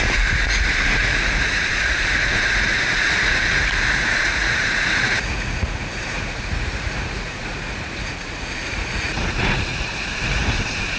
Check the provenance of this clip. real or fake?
fake